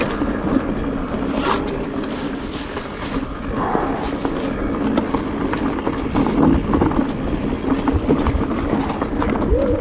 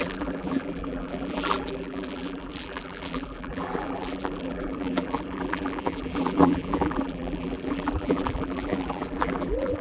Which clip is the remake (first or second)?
second